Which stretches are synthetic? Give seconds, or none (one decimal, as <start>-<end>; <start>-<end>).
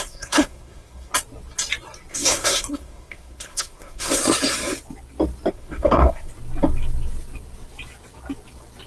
0.0-1.1; 2.1-4.2; 5.5-6.3